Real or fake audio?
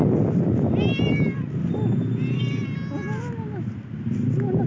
real